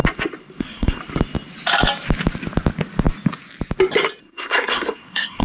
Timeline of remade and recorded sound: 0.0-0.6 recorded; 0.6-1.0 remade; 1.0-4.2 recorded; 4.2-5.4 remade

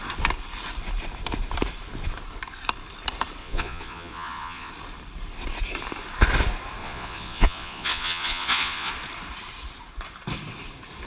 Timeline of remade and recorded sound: 0.0-3.4 recorded; 3.4-4.7 remade; 4.7-6.8 recorded; 6.8-8.9 remade; 8.9-11.1 recorded